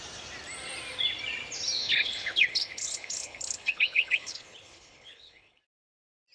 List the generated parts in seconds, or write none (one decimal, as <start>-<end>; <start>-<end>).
1.8-5.6